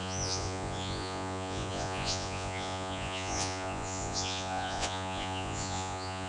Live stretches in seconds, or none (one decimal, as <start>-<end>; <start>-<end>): none